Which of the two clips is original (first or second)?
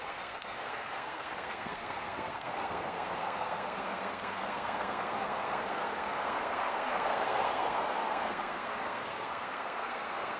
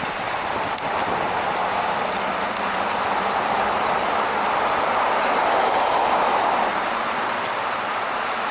second